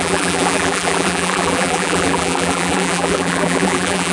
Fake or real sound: fake